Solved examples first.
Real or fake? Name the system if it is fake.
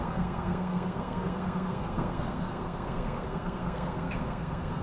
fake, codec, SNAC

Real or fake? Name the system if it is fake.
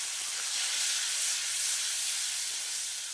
real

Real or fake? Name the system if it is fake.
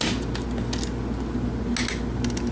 real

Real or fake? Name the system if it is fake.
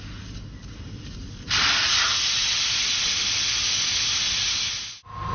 real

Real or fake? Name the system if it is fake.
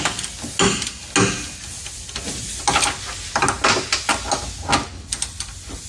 real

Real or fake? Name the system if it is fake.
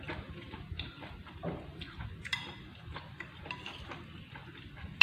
fake, vocoder, BigVGAN v2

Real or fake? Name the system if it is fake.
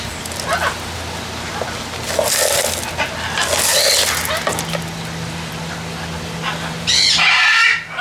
real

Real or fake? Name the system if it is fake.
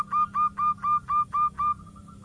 real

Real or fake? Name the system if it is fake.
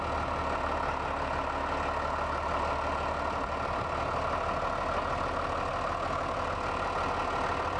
real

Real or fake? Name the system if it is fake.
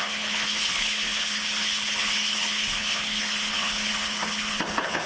fake, codec, HILCodec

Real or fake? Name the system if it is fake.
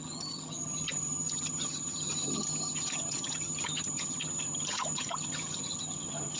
fake, vocoder, HiFi-GAN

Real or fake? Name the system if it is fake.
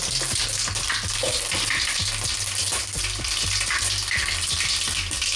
real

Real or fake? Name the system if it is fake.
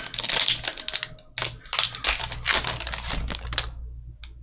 real